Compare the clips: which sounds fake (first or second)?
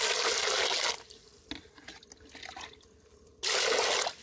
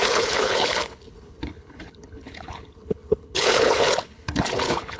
second